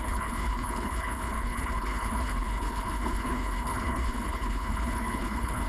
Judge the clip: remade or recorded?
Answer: remade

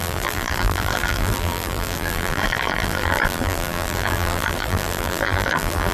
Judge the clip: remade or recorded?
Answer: remade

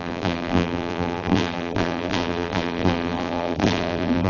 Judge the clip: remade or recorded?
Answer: remade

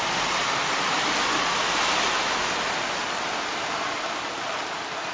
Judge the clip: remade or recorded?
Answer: recorded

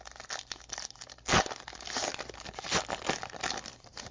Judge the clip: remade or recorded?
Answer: recorded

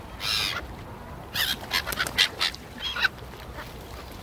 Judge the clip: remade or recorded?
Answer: recorded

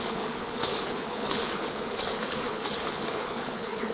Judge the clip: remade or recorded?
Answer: remade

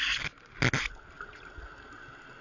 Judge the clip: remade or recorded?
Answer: recorded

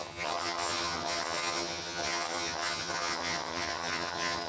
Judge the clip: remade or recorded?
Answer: remade